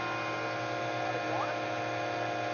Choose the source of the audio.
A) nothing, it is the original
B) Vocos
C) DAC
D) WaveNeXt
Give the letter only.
A